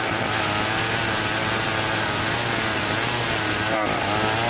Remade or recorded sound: recorded